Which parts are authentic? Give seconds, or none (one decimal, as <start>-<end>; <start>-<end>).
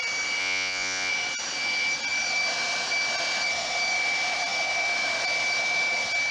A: 0.0-0.4; 1.1-6.3